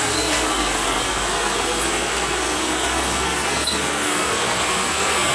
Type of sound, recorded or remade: remade